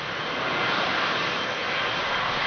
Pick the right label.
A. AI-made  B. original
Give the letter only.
B